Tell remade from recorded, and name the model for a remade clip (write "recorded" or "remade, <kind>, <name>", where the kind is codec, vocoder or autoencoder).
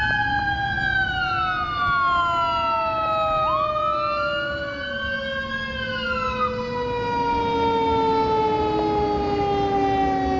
recorded